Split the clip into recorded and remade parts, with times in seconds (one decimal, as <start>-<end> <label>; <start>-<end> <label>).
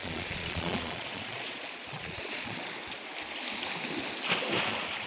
0.0-2.7 remade; 2.7-5.1 recorded